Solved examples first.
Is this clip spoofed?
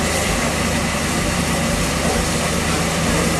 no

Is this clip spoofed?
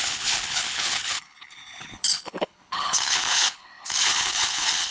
yes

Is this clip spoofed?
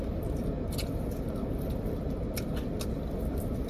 no